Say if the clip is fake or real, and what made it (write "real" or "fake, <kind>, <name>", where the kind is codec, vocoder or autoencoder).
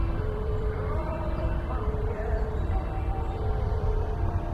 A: fake, vocoder, BigVGAN v2